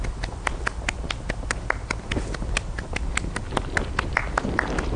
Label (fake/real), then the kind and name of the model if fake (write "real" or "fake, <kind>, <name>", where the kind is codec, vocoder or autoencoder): real